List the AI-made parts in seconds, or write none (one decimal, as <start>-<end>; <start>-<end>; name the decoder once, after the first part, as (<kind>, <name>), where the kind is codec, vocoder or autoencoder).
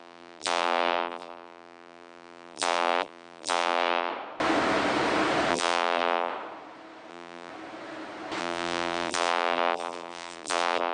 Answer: 0.0-4.1 (vocoder, BigVGAN v2); 5.5-6.3; 7.1-7.5; 8.4-10.9